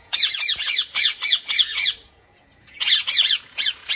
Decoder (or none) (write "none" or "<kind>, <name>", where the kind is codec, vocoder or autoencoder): vocoder, Vocos